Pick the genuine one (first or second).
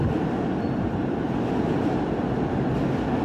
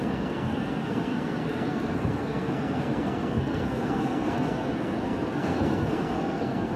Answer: first